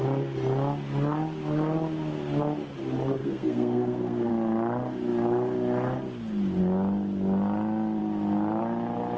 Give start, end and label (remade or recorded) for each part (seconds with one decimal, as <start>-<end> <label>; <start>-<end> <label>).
0.0-3.2 recorded; 3.2-4.3 remade; 4.3-9.2 recorded